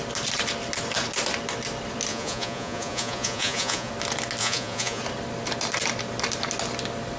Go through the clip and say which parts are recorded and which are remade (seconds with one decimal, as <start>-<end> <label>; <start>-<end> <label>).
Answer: 0.0-2.1 recorded; 2.1-3.9 remade; 3.9-4.4 recorded; 4.4-5.0 remade; 5.0-7.2 recorded